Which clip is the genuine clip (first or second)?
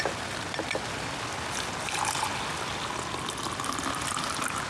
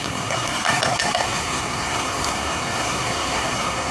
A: first